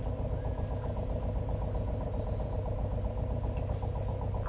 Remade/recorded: recorded